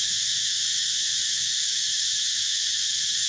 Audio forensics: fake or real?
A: fake